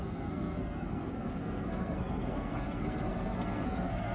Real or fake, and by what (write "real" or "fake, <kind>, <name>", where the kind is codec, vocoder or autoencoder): fake, codec, SNAC